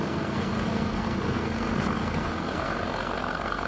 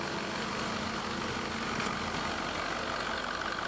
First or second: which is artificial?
first